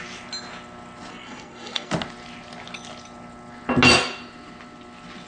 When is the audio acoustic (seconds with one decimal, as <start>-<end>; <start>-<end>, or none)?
0.0-1.1; 1.9-5.3